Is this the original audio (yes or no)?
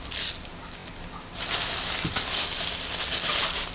yes